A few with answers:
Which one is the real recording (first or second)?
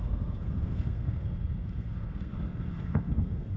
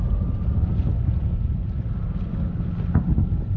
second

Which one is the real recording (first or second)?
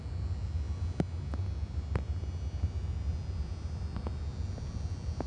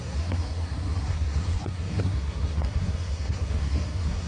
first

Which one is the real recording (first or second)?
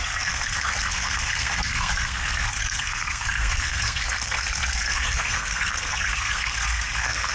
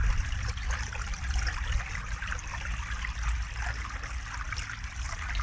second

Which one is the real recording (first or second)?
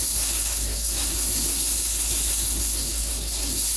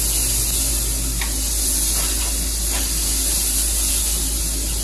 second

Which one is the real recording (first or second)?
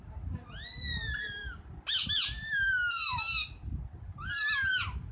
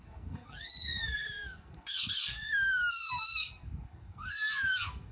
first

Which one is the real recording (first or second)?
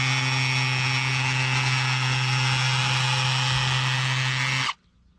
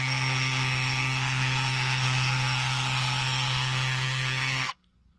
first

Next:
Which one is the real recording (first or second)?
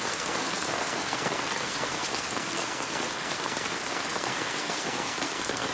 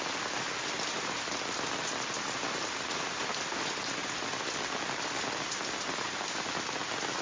second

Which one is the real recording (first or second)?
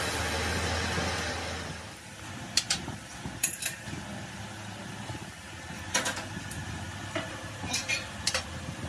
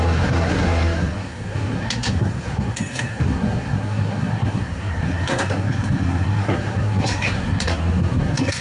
first